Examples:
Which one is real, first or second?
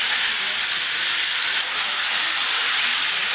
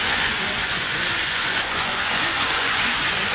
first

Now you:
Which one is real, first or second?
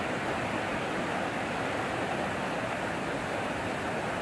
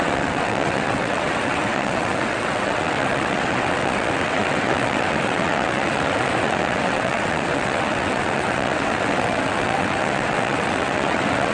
first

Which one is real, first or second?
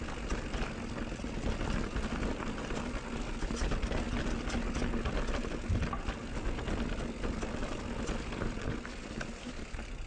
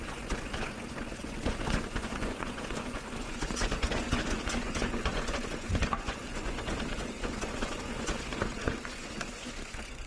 first